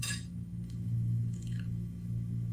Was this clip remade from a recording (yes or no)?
yes